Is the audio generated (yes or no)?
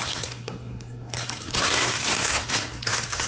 yes